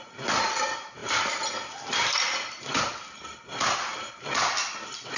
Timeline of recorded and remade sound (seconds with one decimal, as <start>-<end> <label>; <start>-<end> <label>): 0.0-5.2 recorded